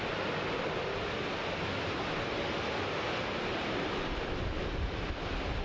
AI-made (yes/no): no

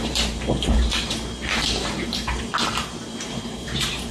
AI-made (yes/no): yes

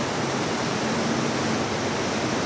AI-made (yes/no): no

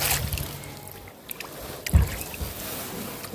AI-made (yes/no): no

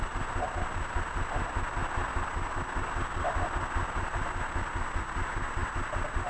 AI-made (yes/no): no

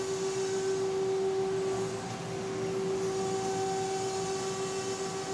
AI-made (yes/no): no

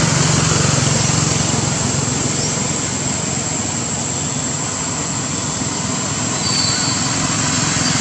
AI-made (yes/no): no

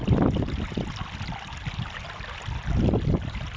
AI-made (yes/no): no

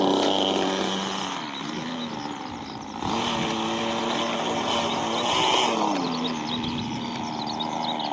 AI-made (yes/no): no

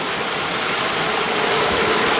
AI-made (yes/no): no